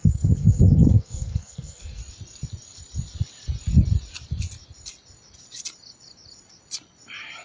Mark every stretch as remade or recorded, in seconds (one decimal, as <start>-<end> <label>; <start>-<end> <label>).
0.0-2.0 remade; 2.0-7.4 recorded